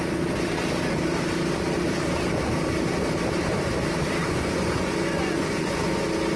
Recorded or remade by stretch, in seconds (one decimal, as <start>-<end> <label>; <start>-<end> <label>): 0.0-4.2 recorded; 4.2-6.0 remade; 6.0-6.4 recorded